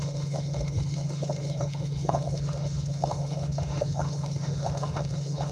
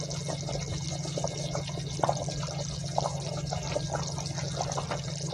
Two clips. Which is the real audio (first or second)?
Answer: second